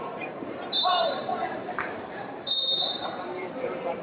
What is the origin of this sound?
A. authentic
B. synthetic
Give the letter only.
B